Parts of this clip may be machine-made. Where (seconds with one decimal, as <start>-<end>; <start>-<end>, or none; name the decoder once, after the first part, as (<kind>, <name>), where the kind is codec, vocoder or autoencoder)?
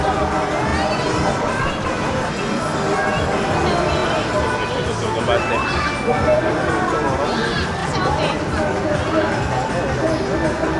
0.7-2.3 (vocoder, BigVGAN v2); 7.8-8.4